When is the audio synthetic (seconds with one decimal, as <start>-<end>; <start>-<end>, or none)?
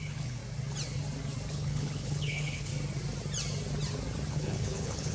0.0-0.4; 1.5-2.7; 4.3-5.1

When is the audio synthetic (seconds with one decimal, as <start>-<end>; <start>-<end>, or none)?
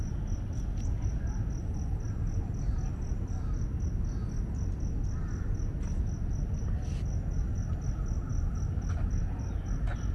none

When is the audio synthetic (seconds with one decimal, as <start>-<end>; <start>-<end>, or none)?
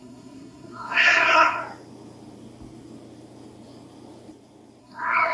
0.0-1.6; 4.8-5.3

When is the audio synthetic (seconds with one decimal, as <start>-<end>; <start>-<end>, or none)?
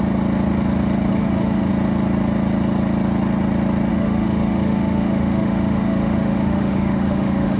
1.1-1.7; 3.9-7.6